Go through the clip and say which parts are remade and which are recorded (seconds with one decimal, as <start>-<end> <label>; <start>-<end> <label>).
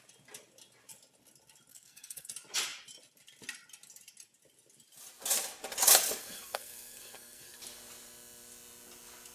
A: 0.0-1.7 recorded; 1.7-2.3 remade; 2.3-6.2 recorded; 6.2-7.6 remade; 7.6-9.3 recorded